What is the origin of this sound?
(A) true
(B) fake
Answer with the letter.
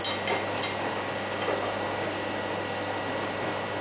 A